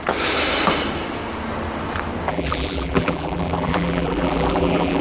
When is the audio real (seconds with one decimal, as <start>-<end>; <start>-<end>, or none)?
0.0-2.3